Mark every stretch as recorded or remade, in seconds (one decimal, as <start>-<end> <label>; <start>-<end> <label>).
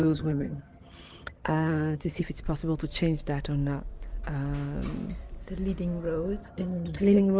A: 0.0-2.2 remade; 2.2-6.4 recorded; 6.4-7.4 remade